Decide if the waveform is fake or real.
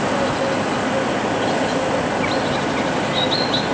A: real